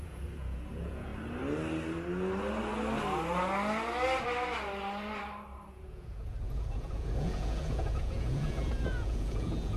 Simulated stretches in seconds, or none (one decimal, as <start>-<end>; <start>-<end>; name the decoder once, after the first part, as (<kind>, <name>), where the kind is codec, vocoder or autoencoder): 0.0-1.1 (vocoder, Vocos); 5.7-9.8

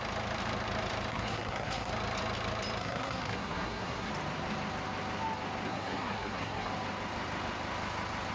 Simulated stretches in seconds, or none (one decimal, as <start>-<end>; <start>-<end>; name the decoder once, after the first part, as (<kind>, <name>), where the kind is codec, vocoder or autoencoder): 1.1-1.9 (codec, SNAC); 2.8-4.1; 5.7-6.7

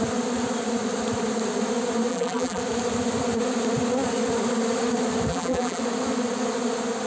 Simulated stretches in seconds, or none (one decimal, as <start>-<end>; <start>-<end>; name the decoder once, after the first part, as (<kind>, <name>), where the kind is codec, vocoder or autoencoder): 2.1-2.6 (vocoder, BigVGAN v2); 5.3-5.8

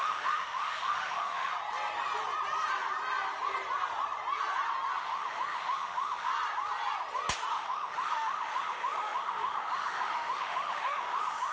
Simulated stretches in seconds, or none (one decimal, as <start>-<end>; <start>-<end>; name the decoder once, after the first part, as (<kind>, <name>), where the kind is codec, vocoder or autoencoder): 0.0-1.5 (autoencoder, DAC-VAE); 5.0-6.3; 7.5-11.5

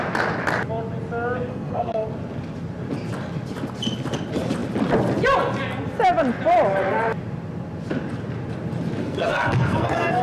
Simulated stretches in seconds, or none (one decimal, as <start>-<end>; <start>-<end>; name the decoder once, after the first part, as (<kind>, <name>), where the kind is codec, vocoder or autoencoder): 1.5-2.1 (codec, SNAC); 9.0-10.2

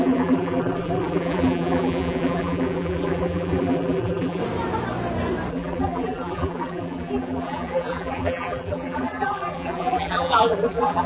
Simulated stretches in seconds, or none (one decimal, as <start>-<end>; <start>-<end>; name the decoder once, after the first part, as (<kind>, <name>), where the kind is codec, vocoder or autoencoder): 0.0-4.4 (vocoder, BigVGAN v2); 5.5-11.1